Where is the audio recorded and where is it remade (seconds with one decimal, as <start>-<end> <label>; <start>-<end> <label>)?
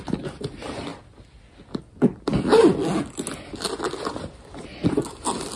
0.0-5.6 recorded